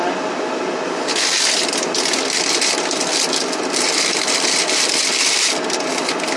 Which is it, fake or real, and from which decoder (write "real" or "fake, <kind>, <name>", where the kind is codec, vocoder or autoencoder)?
real